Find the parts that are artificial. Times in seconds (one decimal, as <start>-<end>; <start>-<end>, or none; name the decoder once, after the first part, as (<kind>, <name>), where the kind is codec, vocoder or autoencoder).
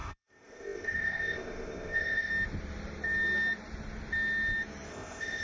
0.0-2.3 (codec, ZipCodec); 4.9-5.4